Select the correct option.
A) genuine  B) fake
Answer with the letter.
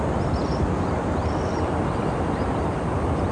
A